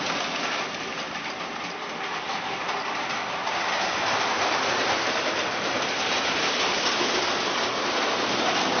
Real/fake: real